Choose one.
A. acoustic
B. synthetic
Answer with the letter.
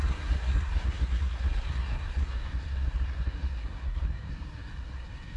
B